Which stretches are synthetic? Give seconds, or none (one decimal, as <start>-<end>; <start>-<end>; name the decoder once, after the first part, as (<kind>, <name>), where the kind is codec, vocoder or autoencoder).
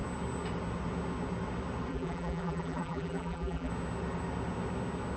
1.9-3.7 (vocoder, BigVGAN v2)